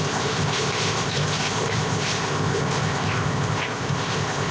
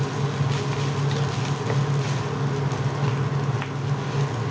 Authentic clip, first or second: second